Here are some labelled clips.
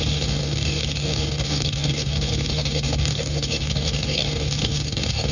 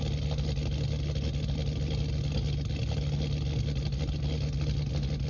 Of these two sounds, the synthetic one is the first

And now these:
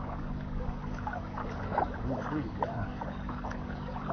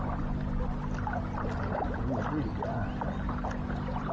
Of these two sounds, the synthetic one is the first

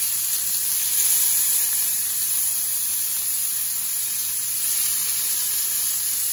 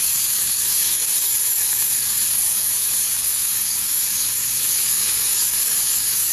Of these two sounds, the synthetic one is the second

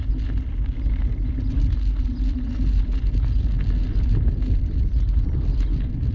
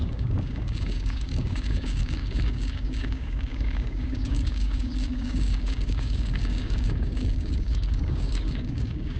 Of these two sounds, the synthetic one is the second